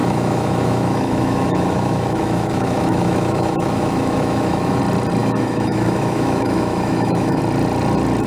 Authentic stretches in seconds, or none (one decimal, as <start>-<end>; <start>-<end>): 4.8-5.2; 7.4-8.3